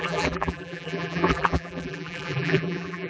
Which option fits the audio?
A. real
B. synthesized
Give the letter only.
B